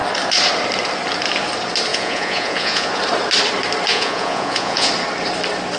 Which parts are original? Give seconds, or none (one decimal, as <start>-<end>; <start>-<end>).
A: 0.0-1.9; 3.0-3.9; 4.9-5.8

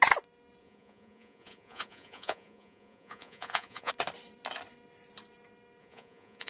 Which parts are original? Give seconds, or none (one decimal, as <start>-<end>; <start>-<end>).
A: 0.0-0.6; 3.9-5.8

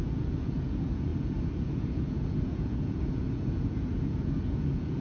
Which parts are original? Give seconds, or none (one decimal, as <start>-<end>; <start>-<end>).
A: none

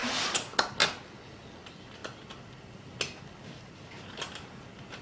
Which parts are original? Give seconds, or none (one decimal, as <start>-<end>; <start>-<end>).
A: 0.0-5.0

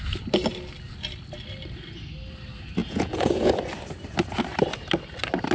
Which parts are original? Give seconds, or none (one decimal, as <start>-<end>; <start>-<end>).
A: 0.0-2.8; 3.5-5.5

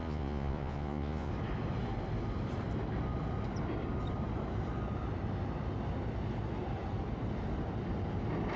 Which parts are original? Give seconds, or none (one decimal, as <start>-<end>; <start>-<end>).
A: 1.3-8.6

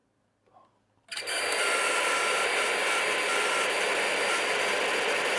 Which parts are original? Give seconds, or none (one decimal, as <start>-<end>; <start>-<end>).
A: 0.0-5.4